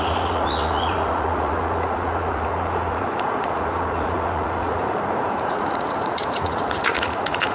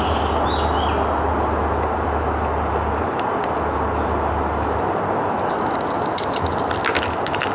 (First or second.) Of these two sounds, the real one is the second